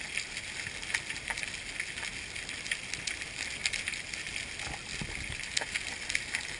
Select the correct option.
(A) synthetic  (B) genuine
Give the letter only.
B